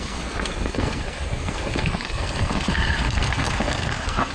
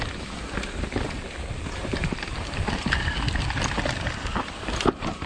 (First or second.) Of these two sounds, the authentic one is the second